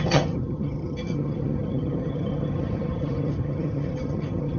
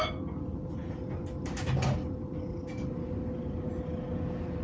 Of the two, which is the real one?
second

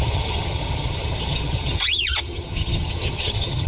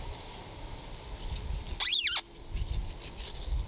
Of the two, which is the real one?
second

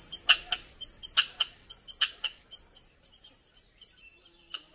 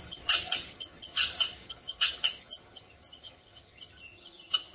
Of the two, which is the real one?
first